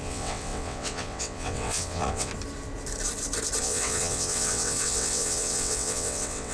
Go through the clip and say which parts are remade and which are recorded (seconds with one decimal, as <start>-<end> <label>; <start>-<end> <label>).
0.0-2.3 remade; 2.3-3.6 recorded; 3.6-6.5 remade